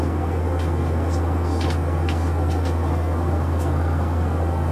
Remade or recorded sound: remade